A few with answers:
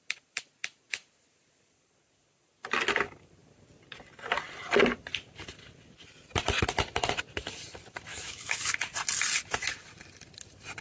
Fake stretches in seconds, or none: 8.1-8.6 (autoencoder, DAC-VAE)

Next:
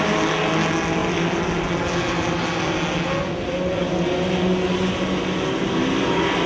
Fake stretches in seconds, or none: none